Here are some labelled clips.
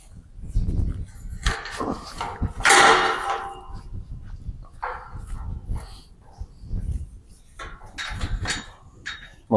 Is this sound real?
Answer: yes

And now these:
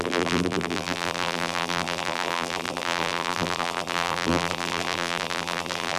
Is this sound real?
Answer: no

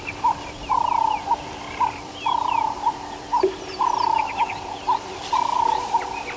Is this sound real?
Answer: no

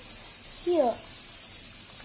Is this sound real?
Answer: yes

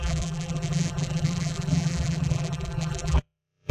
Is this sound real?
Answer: no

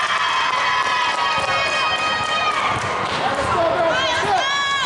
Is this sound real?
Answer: yes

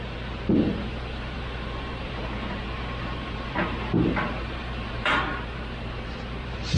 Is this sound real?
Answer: no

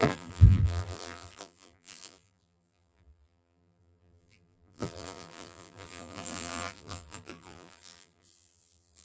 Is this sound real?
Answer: no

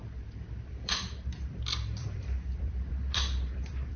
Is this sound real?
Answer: no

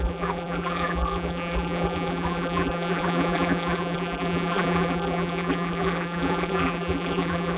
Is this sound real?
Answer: no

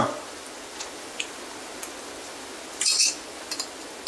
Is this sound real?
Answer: no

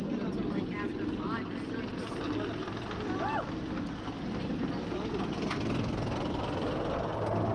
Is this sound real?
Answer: yes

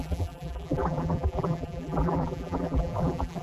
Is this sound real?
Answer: no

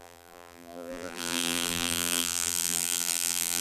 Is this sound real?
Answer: no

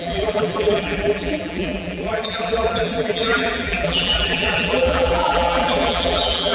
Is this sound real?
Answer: no